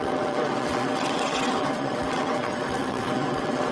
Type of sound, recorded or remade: remade